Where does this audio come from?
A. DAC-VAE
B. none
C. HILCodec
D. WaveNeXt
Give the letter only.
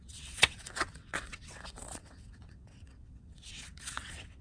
D